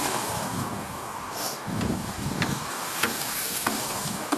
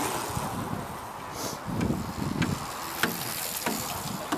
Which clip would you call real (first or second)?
second